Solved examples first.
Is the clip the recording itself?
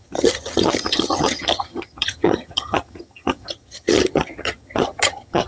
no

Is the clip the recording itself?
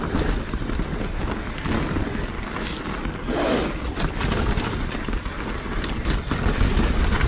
yes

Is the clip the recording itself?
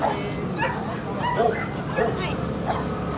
yes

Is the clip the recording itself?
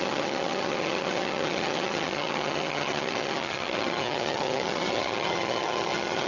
no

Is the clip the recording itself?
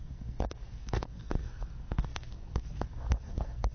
no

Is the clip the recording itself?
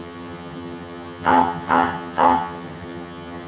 no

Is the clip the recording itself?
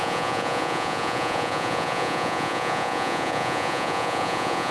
no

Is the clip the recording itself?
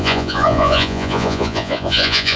no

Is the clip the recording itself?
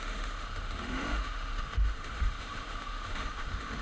no